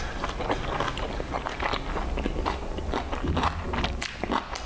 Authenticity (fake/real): real